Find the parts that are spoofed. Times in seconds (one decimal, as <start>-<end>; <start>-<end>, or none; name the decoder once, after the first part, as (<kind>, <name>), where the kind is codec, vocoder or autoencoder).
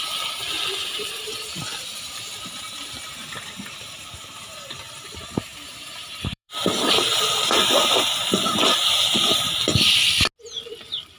0.8-1.6 (vocoder, BigVGAN v2); 5.5-7.0